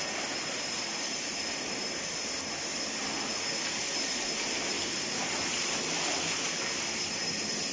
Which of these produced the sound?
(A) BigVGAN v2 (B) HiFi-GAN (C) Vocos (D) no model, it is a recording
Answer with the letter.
D